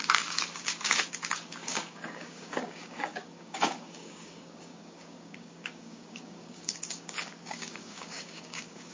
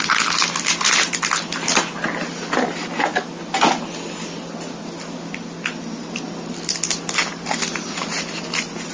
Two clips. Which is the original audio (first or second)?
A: second